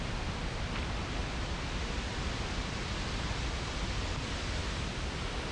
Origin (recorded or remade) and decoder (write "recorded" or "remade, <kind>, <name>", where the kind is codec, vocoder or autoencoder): recorded